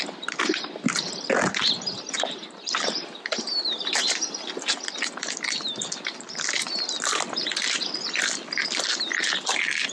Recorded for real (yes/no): yes